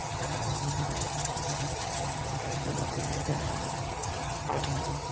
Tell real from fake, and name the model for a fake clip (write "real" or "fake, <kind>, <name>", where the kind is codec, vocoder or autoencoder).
fake, vocoder, HiFi-GAN